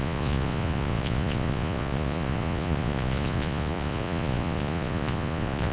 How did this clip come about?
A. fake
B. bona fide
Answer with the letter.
A